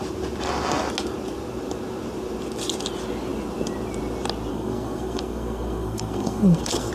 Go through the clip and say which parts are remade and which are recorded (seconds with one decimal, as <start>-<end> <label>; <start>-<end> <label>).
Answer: 0.0-4.5 recorded; 4.5-6.9 remade